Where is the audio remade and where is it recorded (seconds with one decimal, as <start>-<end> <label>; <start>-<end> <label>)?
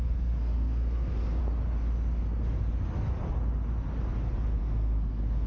0.0-1.4 remade; 1.4-4.6 recorded; 4.6-5.5 remade